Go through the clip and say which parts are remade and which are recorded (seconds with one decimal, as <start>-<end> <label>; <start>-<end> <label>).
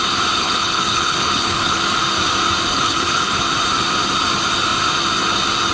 0.0-0.4 recorded; 0.4-1.8 remade; 1.8-2.7 recorded; 2.7-3.4 remade; 3.4-5.7 recorded